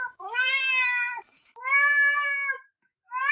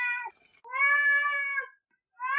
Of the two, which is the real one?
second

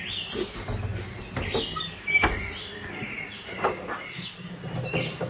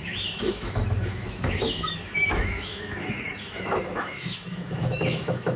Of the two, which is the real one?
first